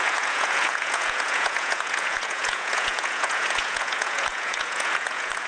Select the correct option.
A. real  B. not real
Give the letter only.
B